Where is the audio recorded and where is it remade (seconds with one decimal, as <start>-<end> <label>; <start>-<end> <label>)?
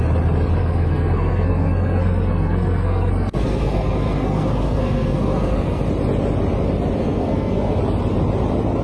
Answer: 0.0-0.6 recorded; 0.6-5.8 remade; 5.8-7.0 recorded; 7.0-7.8 remade; 7.8-8.8 recorded